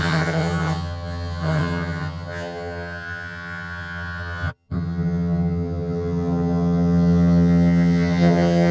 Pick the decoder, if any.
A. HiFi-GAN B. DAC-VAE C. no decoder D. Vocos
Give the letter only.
A